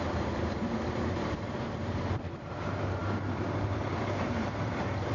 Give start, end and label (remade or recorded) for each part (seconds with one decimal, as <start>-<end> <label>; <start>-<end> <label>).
0.0-5.1 remade